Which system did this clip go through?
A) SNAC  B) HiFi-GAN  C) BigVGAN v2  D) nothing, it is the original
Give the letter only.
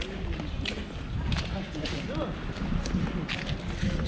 D